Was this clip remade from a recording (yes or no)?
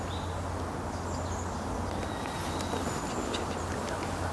no